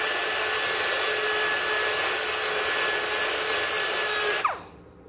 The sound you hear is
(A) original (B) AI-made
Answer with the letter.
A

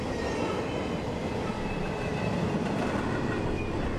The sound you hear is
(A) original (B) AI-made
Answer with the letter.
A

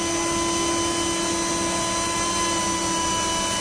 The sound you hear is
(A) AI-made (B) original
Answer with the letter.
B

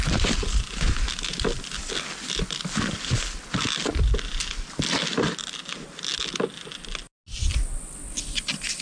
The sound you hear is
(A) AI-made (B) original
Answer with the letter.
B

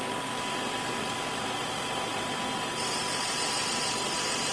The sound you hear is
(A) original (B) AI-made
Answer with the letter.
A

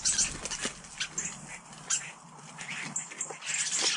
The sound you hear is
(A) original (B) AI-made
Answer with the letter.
A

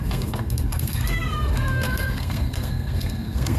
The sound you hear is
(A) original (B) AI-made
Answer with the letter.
B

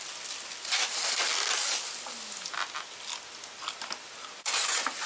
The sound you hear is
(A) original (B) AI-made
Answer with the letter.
A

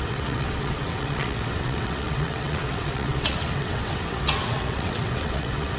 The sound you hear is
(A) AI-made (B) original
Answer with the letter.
A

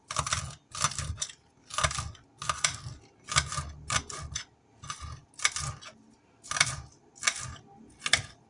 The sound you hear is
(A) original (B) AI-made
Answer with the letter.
A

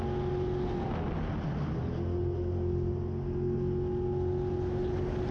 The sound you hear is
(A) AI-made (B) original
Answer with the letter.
B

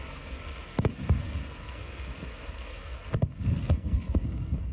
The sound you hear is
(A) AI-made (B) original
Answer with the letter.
A